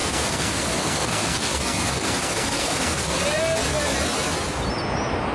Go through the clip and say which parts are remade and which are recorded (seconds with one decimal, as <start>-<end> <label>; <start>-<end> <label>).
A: 0.0-3.2 remade; 3.2-5.3 recorded

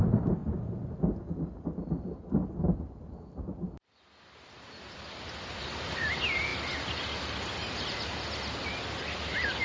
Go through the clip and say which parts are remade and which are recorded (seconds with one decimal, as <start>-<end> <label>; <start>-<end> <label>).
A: 0.0-9.6 recorded

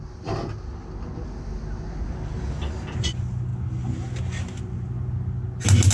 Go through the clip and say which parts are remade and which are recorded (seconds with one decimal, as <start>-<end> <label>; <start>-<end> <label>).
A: 0.0-5.9 recorded

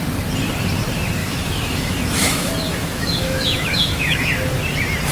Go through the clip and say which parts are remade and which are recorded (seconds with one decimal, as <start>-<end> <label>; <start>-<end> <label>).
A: 0.0-1.2 recorded; 1.2-4.3 remade; 4.3-5.1 recorded

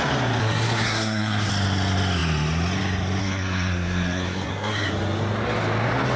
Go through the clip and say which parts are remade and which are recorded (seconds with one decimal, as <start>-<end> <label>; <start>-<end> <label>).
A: 0.0-0.4 recorded; 0.4-1.5 remade; 1.5-3.2 recorded; 3.2-4.9 remade; 4.9-6.2 recorded

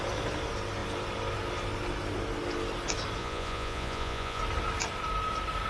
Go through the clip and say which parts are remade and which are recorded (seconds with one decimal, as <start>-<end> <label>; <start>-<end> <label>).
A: 0.0-3.2 recorded; 3.2-4.4 remade; 4.4-5.7 recorded

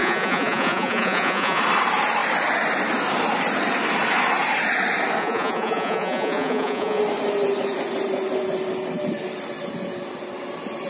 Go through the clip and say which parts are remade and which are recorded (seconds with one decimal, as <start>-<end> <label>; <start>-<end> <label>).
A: 0.0-1.6 remade; 1.6-5.2 recorded; 5.2-7.0 remade; 7.0-10.9 recorded